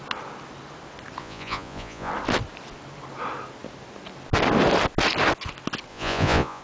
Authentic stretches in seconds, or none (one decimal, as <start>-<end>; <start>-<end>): 0.0-1.2; 2.1-5.9